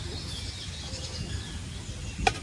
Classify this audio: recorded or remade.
recorded